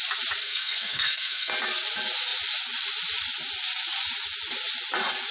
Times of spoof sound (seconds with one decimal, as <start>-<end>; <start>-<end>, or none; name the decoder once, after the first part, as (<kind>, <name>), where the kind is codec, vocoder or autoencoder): 0.4-1.5 (codec, SNAC)

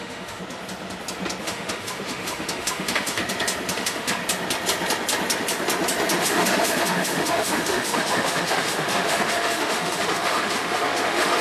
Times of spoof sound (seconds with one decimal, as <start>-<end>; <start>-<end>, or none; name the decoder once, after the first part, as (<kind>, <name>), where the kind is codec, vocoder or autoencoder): 0.0-0.4 (autoencoder, DAC-VAE); 1.4-3.2; 3.7-4.2; 6.2-11.4